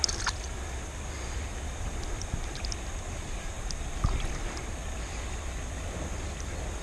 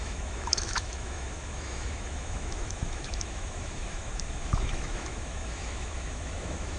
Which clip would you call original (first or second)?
first